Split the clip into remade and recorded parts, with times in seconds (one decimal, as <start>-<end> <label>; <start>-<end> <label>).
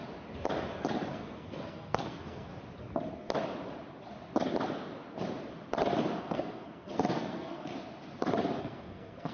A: 0.0-1.1 recorded; 1.1-2.5 remade; 2.5-6.2 recorded; 6.2-7.7 remade; 7.7-8.6 recorded; 8.6-9.3 remade